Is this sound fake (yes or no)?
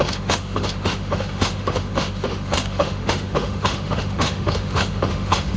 yes